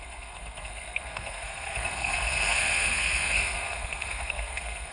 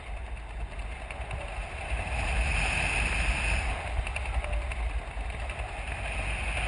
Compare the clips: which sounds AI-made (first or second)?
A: first